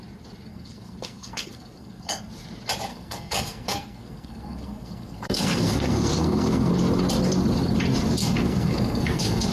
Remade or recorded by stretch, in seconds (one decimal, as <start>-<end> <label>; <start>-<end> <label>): 0.0-0.5 recorded; 0.5-2.3 remade; 2.3-2.9 recorded; 2.9-6.7 remade; 6.7-8.2 recorded; 8.2-9.5 remade

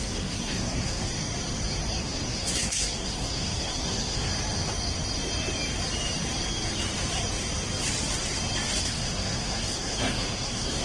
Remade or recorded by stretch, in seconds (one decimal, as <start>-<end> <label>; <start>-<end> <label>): 0.0-1.1 remade; 1.1-2.0 recorded; 2.0-4.3 remade; 4.3-8.8 recorded; 8.8-10.8 remade

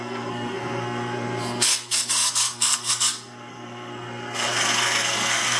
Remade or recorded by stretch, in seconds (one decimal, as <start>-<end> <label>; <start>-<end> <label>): 0.0-5.6 remade

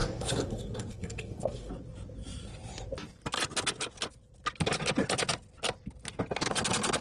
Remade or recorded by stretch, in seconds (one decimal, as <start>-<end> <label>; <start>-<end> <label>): 0.0-1.7 remade; 1.7-7.0 recorded

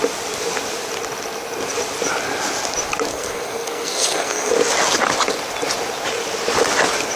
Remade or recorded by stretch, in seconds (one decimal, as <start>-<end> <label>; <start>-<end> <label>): 0.0-3.1 recorded; 3.1-4.5 remade; 4.5-7.2 recorded

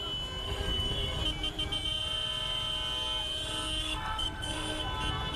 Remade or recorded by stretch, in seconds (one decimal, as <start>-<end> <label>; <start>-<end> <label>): 0.0-0.4 recorded; 0.4-1.2 remade; 1.2-3.8 recorded; 3.8-4.8 remade; 4.8-5.4 recorded